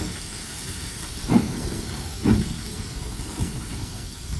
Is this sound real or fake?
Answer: fake